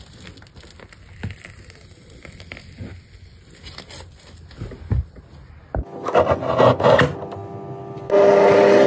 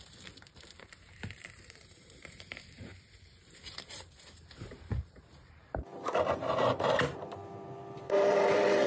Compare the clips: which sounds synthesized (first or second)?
second